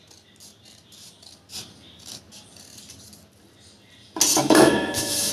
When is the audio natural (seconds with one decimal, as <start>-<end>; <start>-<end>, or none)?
0.0-4.3